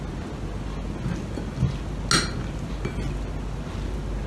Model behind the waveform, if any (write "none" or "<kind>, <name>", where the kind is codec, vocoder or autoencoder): none